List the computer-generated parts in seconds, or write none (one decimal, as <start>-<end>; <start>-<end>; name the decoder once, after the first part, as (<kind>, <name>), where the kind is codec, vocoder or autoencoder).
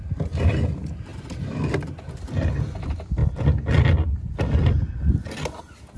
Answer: none